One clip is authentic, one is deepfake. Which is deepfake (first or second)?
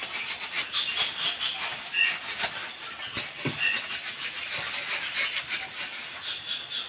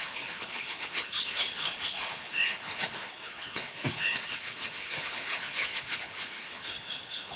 second